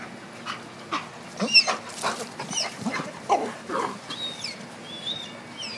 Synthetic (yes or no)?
no